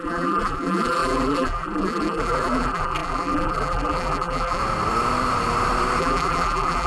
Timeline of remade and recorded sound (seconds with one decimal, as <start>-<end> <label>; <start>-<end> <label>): 0.0-4.6 remade; 4.6-6.0 recorded; 6.0-6.9 remade